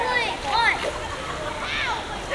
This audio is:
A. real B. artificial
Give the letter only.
A